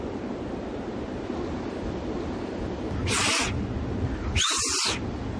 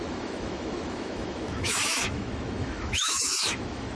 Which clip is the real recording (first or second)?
first